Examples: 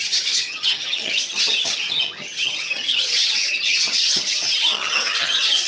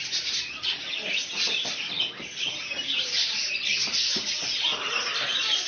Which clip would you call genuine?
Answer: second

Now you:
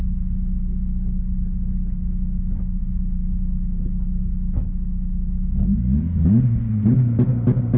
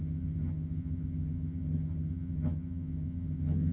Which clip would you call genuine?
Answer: first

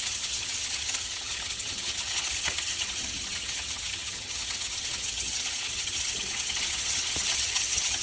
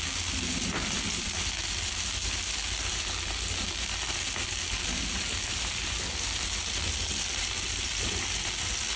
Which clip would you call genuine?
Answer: second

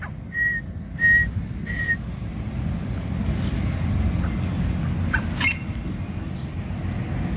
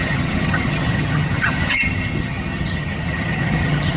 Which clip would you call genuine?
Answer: first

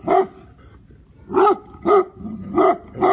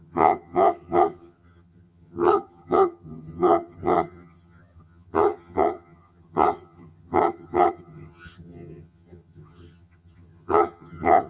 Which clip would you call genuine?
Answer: first